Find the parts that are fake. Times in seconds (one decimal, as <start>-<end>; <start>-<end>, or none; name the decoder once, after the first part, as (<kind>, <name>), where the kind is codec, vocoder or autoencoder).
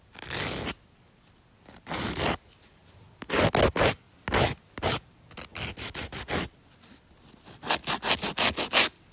none